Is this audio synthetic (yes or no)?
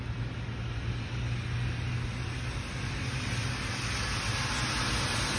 no